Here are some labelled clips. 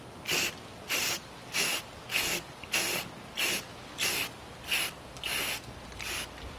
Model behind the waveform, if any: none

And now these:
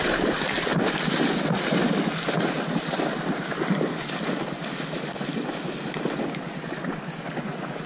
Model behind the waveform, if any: none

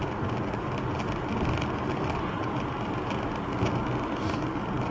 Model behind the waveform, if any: none